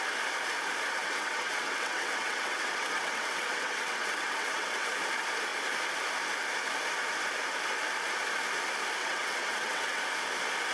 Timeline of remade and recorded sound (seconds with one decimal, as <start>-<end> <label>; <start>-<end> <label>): 0.0-1.0 recorded; 1.0-4.9 remade; 4.9-9.0 recorded; 9.0-10.0 remade; 10.0-10.7 recorded